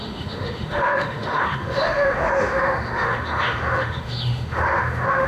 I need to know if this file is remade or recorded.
remade